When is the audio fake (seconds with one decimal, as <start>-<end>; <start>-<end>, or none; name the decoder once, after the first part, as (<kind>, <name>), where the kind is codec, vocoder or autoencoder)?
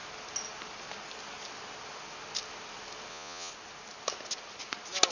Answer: 3.1-3.5 (vocoder, Vocos)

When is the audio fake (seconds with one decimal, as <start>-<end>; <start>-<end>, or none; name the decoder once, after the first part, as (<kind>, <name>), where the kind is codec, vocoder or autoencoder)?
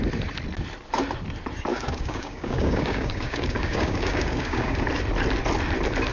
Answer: 1.7-4.8 (codec, DAC)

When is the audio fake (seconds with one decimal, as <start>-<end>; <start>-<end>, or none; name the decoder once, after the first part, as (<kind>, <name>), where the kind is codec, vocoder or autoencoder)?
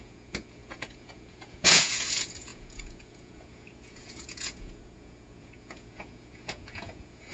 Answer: 0.0-7.3 (vocoder, Vocos)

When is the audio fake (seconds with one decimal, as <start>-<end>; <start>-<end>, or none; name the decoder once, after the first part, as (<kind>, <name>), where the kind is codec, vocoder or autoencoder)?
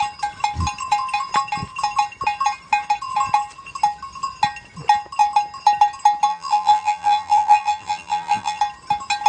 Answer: 6.3-8.6 (vocoder, BigVGAN v2)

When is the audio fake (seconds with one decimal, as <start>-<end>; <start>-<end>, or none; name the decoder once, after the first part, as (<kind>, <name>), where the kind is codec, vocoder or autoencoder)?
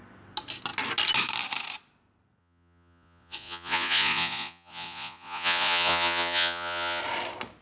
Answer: 2.4-7.0 (vocoder, Vocos)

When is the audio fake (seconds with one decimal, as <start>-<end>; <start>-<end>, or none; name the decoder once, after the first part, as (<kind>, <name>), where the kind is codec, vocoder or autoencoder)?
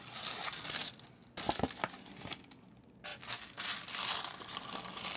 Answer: none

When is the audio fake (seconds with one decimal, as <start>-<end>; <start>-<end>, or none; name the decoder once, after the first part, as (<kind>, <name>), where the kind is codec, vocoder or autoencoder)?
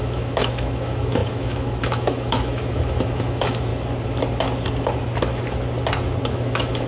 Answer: 0.0-3.7 (autoencoder, DAC-VAE); 6.3-6.9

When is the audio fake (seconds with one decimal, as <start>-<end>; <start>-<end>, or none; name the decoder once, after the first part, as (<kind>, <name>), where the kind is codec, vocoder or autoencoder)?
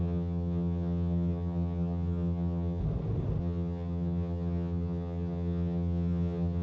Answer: 0.0-2.8 (vocoder, HiFi-GAN); 3.4-6.6